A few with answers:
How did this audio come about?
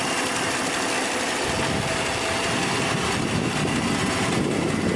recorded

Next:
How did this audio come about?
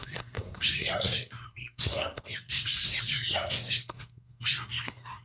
remade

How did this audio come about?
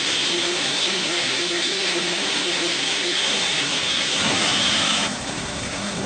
remade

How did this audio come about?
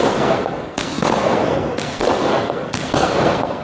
remade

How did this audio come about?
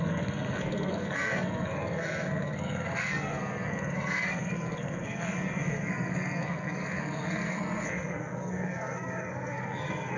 remade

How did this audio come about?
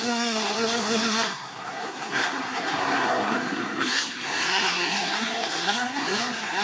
remade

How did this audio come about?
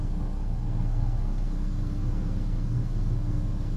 remade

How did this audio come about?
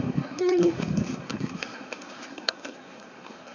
remade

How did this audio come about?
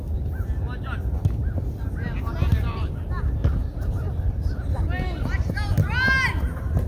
recorded